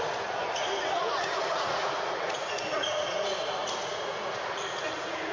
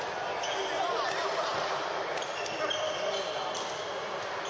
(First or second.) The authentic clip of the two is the second